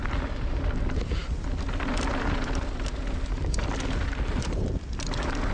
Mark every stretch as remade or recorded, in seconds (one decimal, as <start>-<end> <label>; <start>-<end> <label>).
0.0-5.5 recorded